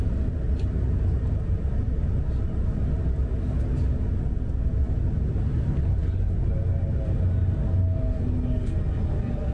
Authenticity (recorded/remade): recorded